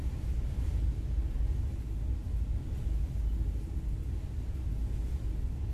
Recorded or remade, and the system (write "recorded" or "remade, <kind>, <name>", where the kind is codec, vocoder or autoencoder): recorded